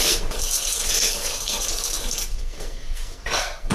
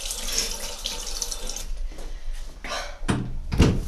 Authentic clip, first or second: second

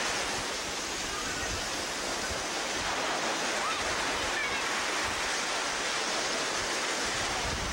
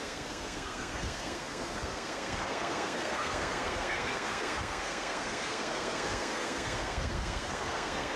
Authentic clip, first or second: first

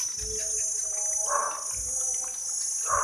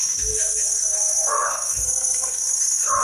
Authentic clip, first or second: first